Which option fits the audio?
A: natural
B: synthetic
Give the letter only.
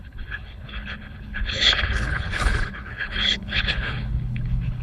B